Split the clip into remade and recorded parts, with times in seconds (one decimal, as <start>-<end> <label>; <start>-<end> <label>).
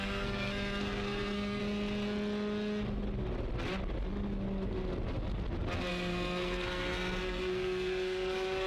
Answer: 0.0-1.6 remade; 1.6-5.9 recorded; 5.9-8.7 remade